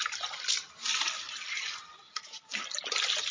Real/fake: real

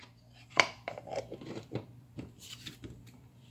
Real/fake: fake